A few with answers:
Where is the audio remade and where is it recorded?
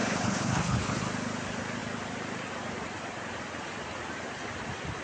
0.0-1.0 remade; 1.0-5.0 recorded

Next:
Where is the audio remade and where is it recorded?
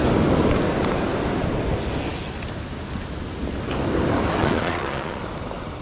0.0-4.4 recorded; 4.4-5.2 remade; 5.2-5.8 recorded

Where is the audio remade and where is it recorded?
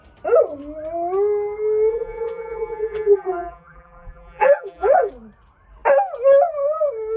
0.0-1.9 recorded; 1.9-5.1 remade; 5.1-7.2 recorded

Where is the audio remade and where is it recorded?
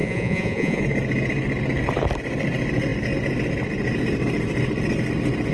0.0-0.8 remade; 0.8-5.5 recorded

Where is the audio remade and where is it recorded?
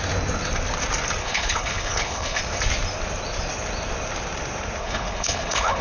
0.0-1.2 recorded; 1.2-2.4 remade; 2.4-4.8 recorded; 4.8-5.8 remade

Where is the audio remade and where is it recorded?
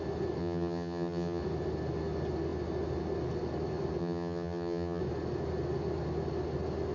0.0-0.4 recorded; 0.4-1.4 remade; 1.4-4.0 recorded; 4.0-5.0 remade; 5.0-6.9 recorded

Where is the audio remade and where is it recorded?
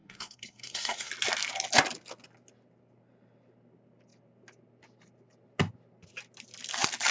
0.0-1.1 remade; 1.1-7.1 recorded